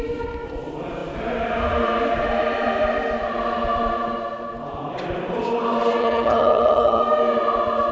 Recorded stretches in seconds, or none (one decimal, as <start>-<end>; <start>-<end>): 0.0-6.0; 7.0-7.9